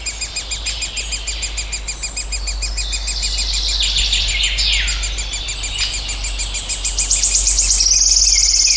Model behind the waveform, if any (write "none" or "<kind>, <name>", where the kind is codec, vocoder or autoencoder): none